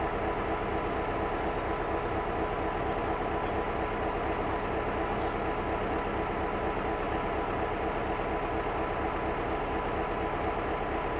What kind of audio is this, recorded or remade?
recorded